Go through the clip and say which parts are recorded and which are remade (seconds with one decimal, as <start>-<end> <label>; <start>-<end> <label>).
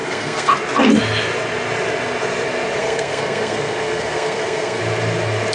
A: 0.0-0.5 remade; 0.5-2.8 recorded; 2.8-4.8 remade; 4.8-5.5 recorded